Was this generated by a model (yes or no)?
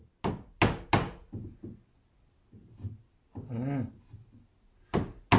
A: no